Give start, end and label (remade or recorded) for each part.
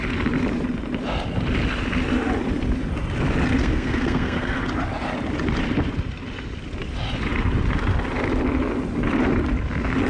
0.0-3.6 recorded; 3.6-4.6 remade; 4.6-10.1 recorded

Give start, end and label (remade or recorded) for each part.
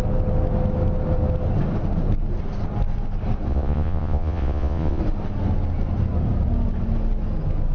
0.0-3.5 recorded; 3.5-5.0 remade; 5.0-7.7 recorded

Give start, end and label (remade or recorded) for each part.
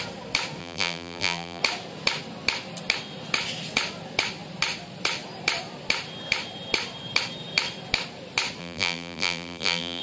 0.0-0.6 recorded; 0.6-1.6 remade; 1.6-8.6 recorded; 8.6-10.0 remade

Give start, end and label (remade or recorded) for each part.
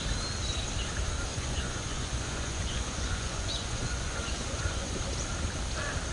0.0-1.3 recorded; 1.3-5.0 remade; 5.0-6.1 recorded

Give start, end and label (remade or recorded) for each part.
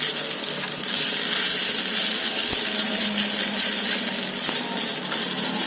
0.0-2.4 recorded; 2.4-4.6 remade; 4.6-5.7 recorded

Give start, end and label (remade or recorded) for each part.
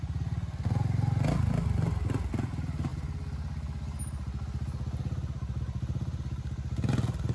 0.0-7.3 recorded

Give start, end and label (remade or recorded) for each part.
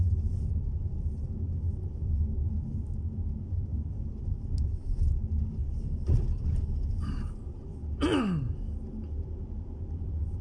0.0-10.4 recorded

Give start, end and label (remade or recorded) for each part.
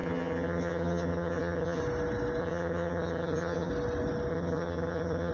0.0-1.8 remade; 1.8-2.4 recorded; 2.4-3.7 remade; 3.7-4.3 recorded; 4.3-5.3 remade